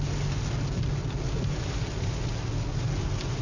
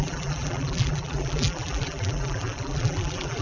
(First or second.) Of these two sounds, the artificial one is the second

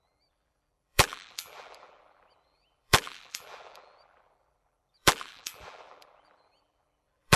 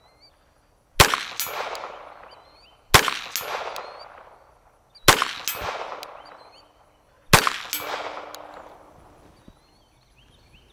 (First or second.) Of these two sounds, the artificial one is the first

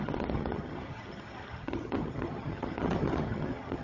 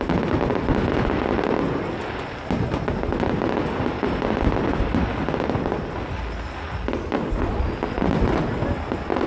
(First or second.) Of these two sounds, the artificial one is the first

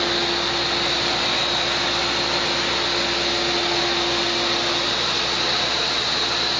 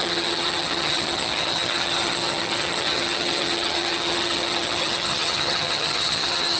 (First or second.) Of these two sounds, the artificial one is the second